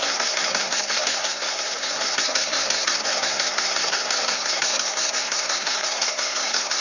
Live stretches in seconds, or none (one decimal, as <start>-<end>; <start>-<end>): none